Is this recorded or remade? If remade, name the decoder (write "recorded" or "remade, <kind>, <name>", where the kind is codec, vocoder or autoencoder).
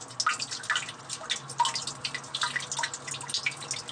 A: recorded